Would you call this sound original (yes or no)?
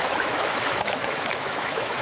no